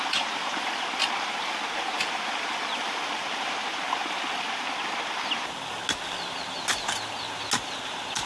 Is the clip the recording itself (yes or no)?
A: yes